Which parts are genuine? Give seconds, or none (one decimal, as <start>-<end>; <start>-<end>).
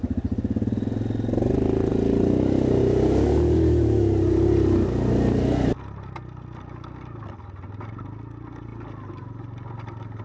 0.0-10.2